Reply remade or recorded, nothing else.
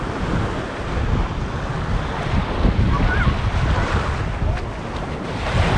recorded